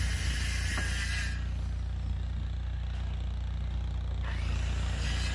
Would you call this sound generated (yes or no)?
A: no